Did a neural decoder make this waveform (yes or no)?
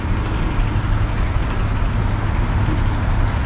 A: no